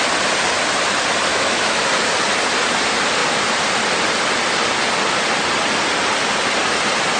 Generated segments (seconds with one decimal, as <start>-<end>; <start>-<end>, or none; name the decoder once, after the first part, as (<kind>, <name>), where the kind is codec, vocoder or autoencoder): 1.3-1.8 (autoencoder, DAC-VAE)